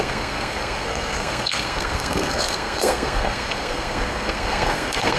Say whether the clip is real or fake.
fake